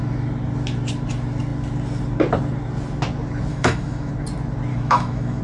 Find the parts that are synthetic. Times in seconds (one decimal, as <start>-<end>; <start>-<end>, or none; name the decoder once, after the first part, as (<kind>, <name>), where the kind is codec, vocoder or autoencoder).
3.5-4.1 (autoencoder, DAC-VAE); 4.7-5.4